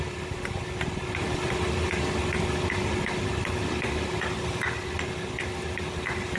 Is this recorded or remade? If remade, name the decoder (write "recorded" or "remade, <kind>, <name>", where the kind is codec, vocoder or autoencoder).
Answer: recorded